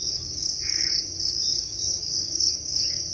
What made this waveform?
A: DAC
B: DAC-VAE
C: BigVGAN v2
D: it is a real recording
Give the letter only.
A